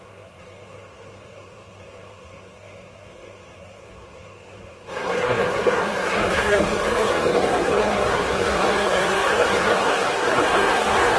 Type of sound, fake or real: fake